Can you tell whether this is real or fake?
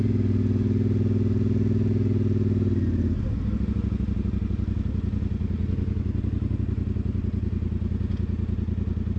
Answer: real